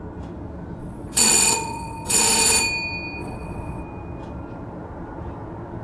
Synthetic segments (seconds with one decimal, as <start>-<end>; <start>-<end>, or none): 0.8-2.2; 3.2-3.8